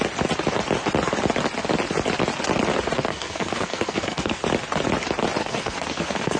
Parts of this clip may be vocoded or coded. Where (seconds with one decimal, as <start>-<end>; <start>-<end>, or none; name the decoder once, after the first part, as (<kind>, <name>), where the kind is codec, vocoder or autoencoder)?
3.1-4.4 (codec, SNAC); 5.4-6.4